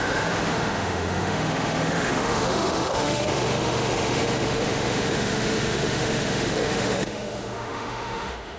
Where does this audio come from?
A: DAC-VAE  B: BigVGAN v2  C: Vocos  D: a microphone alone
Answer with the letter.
A